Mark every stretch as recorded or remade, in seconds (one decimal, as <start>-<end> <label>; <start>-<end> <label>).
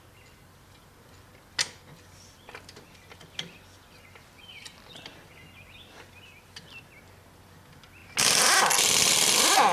0.0-9.7 recorded